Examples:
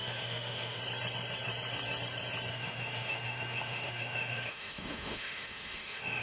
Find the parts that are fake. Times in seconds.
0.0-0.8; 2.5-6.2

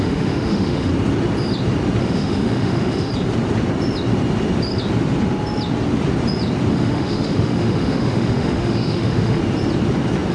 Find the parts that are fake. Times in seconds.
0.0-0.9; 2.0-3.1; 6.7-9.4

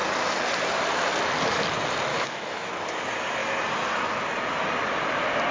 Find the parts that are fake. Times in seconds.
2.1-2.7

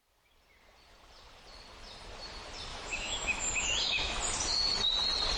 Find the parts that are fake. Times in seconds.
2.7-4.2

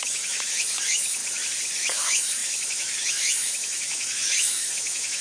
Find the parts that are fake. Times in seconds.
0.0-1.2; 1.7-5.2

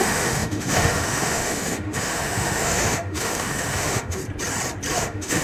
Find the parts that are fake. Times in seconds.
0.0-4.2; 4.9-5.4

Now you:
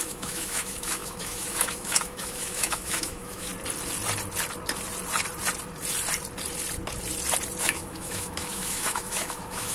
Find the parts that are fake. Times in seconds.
0.0-3.5; 7.6-9.7